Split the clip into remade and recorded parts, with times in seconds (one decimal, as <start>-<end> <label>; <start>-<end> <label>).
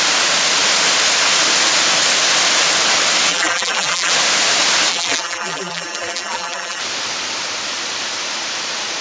0.0-3.3 recorded; 3.3-4.1 remade; 4.1-4.9 recorded; 4.9-6.8 remade; 6.8-9.0 recorded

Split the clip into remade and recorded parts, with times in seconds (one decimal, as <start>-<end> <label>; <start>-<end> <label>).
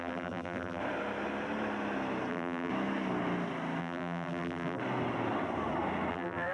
0.0-0.8 remade; 0.8-2.3 recorded; 2.3-2.7 remade; 2.7-3.8 recorded; 3.8-4.8 remade; 4.8-6.1 recorded; 6.1-6.5 remade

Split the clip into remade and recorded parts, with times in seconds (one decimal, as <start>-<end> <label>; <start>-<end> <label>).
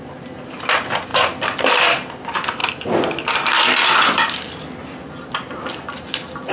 0.0-6.5 recorded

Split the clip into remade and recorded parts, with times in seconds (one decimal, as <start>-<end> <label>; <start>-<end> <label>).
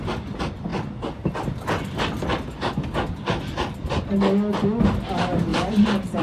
0.0-5.5 recorded; 5.5-6.2 remade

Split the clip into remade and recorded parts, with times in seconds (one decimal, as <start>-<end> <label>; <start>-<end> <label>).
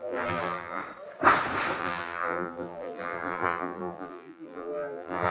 0.0-0.8 remade; 0.8-1.8 recorded; 1.8-5.3 remade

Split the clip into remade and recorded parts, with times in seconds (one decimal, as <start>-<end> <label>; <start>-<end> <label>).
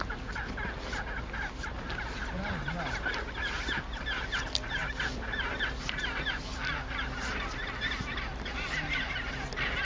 0.0-9.8 recorded